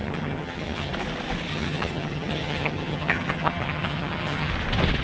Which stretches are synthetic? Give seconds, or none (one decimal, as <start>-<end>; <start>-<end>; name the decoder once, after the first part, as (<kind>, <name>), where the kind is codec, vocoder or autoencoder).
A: 0.0-0.9 (vocoder, HiFi-GAN); 1.5-4.5